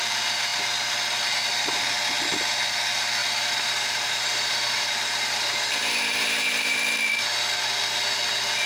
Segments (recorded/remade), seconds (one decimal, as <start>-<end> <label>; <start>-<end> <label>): 0.0-3.2 recorded; 3.2-7.1 remade; 7.1-8.7 recorded